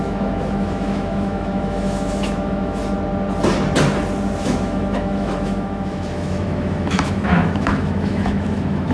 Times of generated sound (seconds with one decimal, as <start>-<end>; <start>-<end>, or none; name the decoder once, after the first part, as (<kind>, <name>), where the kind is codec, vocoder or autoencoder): 0.0-2.8 (autoencoder, DAC-VAE); 4.4-8.9